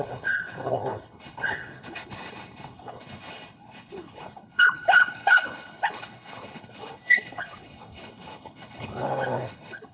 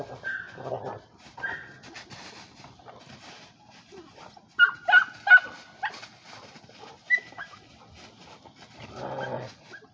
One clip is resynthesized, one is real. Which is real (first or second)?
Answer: second